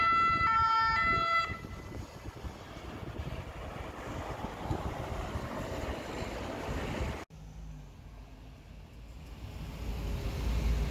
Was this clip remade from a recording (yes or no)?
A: no